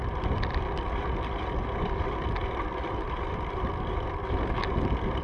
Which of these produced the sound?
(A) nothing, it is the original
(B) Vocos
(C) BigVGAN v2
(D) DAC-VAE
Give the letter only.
A